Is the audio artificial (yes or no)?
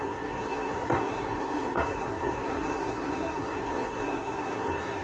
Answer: yes